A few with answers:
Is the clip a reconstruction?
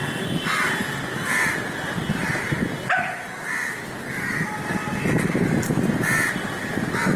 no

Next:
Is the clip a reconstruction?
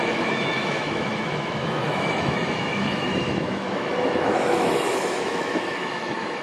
yes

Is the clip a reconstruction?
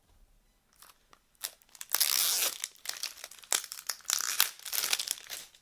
no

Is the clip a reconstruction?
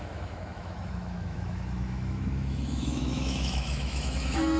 yes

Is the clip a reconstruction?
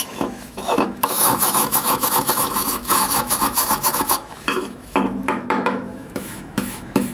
yes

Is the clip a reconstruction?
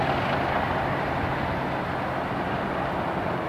no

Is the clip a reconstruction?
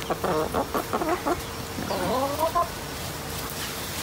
no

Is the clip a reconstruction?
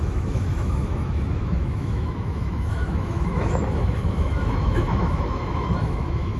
yes